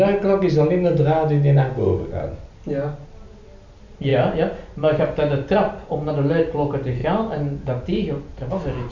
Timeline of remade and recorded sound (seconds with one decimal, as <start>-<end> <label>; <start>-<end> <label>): 0.0-8.9 recorded